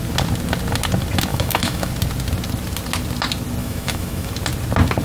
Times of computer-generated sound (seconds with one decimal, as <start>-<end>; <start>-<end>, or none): 1.3-1.9; 3.6-4.3